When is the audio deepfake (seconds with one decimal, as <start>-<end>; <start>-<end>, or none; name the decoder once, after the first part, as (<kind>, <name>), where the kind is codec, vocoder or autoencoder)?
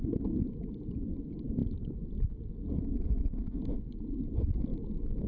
none